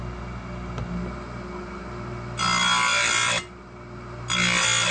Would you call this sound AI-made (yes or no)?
no